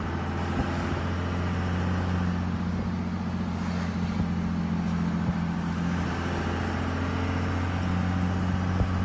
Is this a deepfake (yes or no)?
no